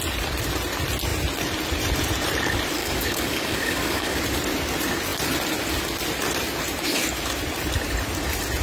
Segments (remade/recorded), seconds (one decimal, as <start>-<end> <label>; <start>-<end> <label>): 0.0-2.8 recorded; 2.8-4.2 remade; 4.2-8.6 recorded